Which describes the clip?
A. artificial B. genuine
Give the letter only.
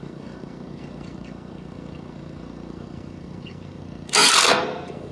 A